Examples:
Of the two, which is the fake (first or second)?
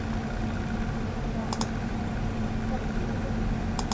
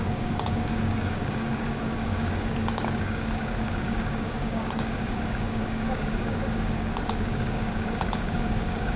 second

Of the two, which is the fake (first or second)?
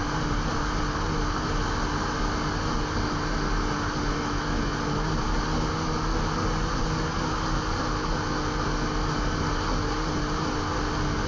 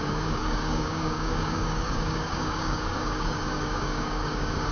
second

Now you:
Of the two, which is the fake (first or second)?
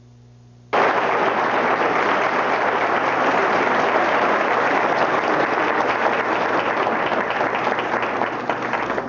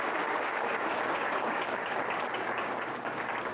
second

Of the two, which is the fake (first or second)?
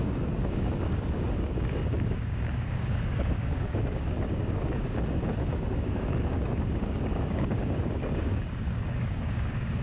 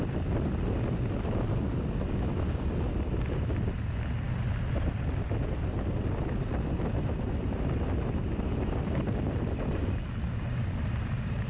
first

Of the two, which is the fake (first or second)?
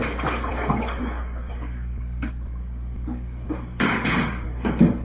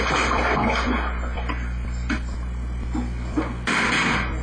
first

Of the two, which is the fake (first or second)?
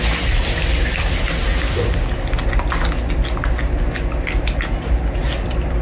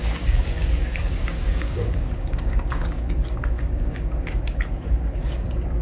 second